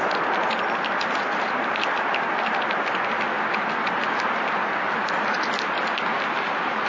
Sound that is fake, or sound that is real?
real